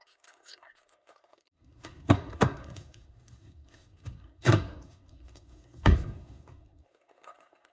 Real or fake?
fake